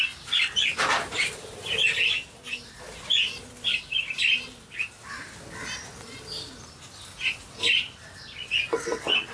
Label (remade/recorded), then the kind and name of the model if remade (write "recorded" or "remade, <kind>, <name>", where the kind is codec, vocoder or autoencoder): recorded